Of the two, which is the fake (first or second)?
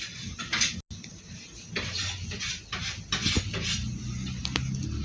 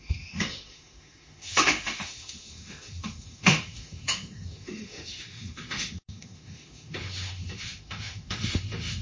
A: second